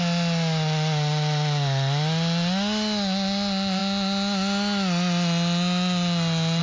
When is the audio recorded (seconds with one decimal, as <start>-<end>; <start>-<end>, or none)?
0.0-6.6